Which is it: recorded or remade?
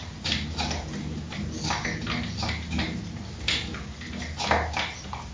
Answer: recorded